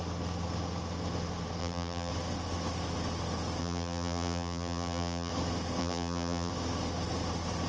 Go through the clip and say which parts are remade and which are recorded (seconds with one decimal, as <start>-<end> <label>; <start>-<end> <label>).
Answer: 0.0-1.6 recorded; 1.6-2.1 remade; 2.1-3.6 recorded; 3.6-5.3 remade; 5.3-5.8 recorded; 5.8-6.5 remade; 6.5-7.7 recorded